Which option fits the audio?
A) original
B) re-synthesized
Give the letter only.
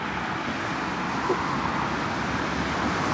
A